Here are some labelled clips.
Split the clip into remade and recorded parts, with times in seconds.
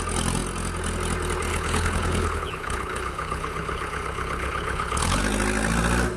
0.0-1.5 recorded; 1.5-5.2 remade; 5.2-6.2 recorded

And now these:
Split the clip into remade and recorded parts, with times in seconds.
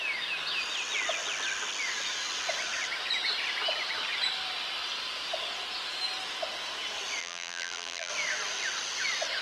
0.0-7.2 recorded; 7.2-8.1 remade; 8.1-9.4 recorded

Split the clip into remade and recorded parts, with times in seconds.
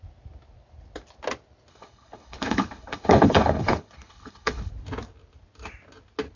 0.0-1.7 recorded; 1.7-4.7 remade; 4.7-6.4 recorded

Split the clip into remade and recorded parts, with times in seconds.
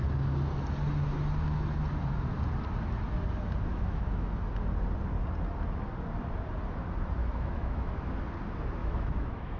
0.0-3.7 recorded; 3.7-4.3 remade; 4.3-7.2 recorded; 7.2-8.0 remade; 8.0-8.8 recorded; 8.8-9.6 remade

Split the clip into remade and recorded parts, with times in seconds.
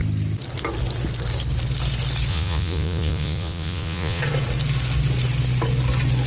0.0-2.3 recorded; 2.3-4.2 remade; 4.2-6.3 recorded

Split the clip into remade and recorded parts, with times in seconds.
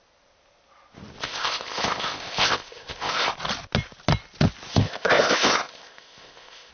0.0-1.2 recorded; 1.2-3.3 remade; 3.3-4.7 recorded; 4.7-6.7 remade